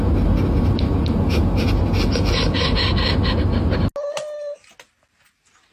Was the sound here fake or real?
real